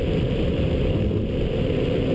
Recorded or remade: recorded